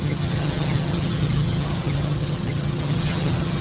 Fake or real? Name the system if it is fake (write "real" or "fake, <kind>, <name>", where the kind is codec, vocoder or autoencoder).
fake, vocoder, HiFi-GAN